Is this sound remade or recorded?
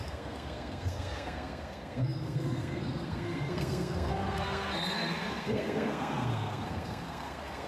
remade